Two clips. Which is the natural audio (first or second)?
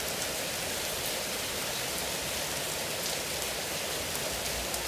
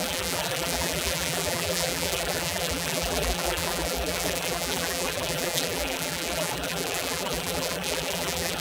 first